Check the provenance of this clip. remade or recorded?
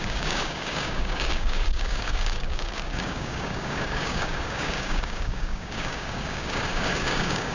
remade